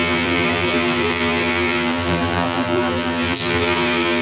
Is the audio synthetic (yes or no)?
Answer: yes